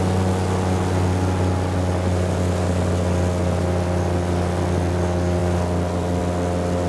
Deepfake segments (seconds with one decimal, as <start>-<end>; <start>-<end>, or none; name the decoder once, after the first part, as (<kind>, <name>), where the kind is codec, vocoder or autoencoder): none